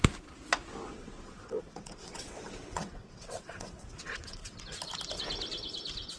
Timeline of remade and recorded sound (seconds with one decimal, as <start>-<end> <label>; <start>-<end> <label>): 0.0-0.9 recorded; 0.9-4.6 remade; 4.6-6.2 recorded